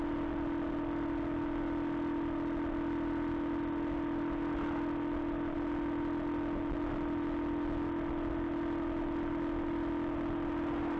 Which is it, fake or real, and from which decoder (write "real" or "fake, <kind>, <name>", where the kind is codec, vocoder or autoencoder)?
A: real